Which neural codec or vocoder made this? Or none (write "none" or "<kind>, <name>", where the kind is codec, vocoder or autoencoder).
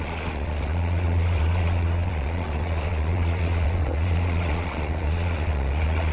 vocoder, Vocos